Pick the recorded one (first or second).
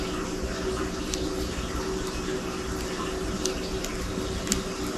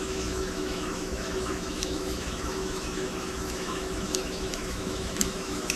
first